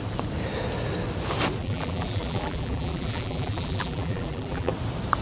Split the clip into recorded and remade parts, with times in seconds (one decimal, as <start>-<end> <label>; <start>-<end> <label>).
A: 0.0-1.6 recorded; 1.6-4.7 remade; 4.7-5.2 recorded